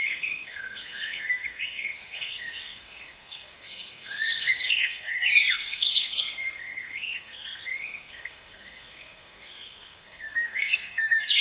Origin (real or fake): fake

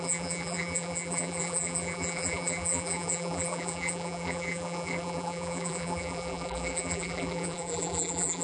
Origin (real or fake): fake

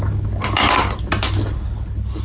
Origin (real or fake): real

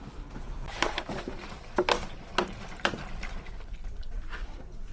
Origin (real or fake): real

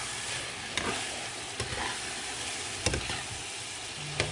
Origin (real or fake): real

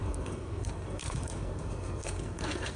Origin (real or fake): fake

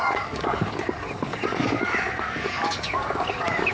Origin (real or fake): fake